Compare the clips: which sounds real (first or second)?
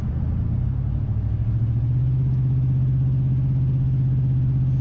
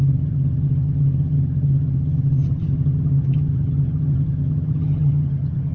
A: first